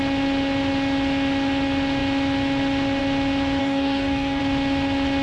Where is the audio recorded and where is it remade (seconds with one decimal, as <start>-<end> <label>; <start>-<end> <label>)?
0.0-3.6 recorded; 3.6-4.4 remade; 4.4-5.2 recorded